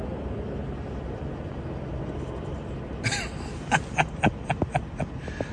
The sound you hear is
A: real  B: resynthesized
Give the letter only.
A